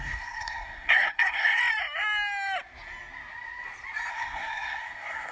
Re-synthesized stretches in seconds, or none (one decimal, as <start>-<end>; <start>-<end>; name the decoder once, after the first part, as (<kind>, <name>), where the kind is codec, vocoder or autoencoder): 0.0-1.6 (codec, SNAC); 4.1-5.3